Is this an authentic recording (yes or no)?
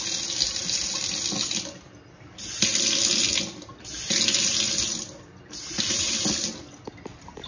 yes